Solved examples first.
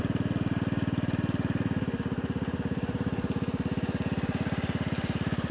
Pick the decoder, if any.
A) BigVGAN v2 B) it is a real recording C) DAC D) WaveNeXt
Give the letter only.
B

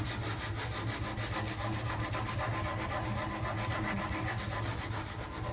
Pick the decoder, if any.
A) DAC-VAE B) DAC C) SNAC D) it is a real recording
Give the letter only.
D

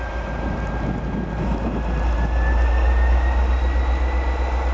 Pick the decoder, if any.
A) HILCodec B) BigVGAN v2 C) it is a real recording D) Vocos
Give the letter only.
C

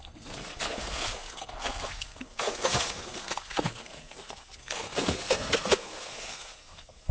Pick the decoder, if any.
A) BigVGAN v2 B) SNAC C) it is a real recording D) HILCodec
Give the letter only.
B